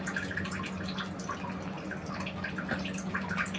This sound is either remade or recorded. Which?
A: recorded